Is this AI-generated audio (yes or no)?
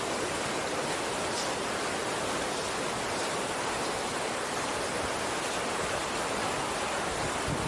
no